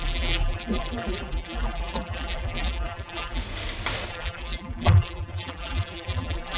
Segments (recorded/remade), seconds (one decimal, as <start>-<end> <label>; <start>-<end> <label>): 0.0-3.4 remade; 3.4-4.1 recorded; 4.1-6.6 remade